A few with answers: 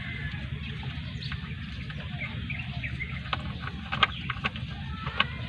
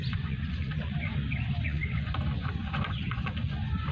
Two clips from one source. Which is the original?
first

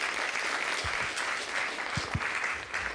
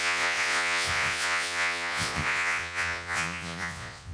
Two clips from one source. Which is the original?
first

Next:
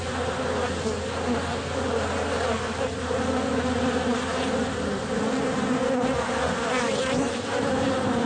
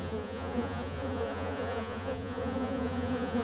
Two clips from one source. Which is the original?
first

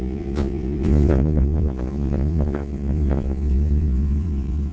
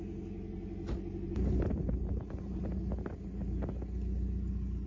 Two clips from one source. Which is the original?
second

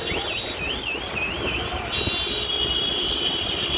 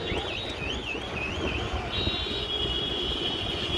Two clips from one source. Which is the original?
first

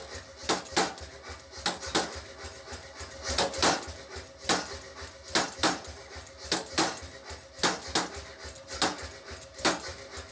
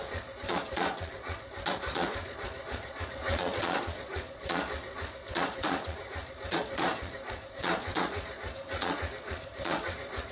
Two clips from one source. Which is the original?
first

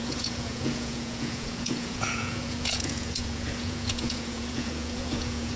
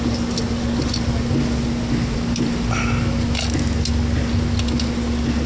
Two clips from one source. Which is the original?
second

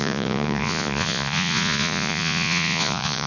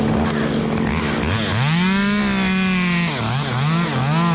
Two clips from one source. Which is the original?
second